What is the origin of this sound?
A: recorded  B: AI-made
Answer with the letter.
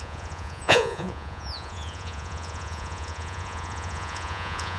B